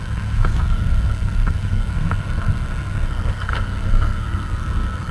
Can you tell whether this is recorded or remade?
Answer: remade